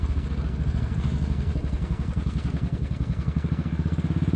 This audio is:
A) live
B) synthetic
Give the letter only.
B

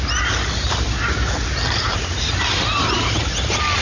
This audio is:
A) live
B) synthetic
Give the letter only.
A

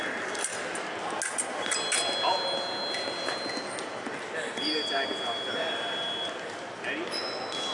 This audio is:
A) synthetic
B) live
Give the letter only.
B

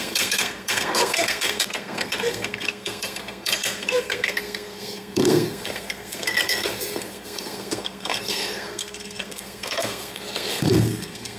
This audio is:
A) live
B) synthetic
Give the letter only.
B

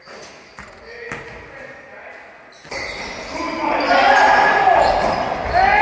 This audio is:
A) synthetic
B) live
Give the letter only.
B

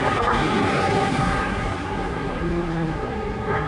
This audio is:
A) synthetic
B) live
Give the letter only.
A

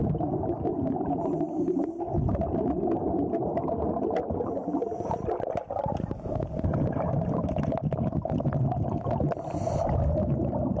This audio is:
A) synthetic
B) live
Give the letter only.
B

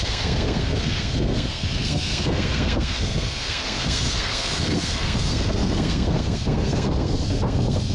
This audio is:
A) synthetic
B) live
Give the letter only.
A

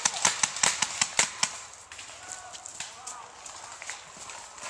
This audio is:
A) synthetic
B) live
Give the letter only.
B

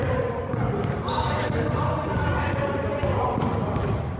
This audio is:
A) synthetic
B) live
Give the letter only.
B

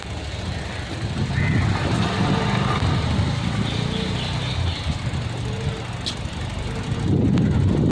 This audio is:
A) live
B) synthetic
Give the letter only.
A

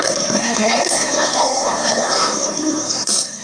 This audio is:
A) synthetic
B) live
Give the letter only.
A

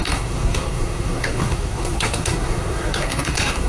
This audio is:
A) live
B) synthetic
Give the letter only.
B